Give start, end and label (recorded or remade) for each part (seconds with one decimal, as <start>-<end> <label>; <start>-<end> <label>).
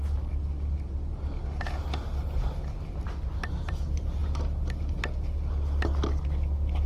0.0-6.9 recorded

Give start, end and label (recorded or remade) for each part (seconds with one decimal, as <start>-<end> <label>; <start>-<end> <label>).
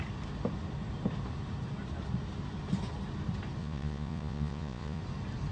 0.0-3.6 recorded; 3.6-5.0 remade; 5.0-5.5 recorded